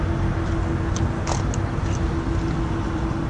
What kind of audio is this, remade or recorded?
recorded